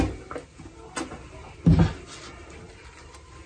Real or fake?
real